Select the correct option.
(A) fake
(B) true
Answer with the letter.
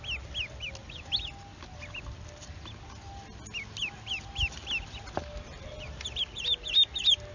B